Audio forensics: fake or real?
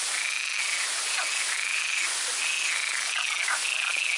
real